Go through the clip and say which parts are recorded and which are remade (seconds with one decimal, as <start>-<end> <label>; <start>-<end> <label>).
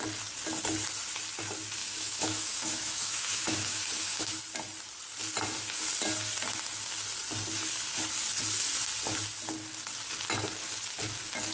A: 0.0-1.8 recorded; 1.8-4.4 remade; 4.4-11.5 recorded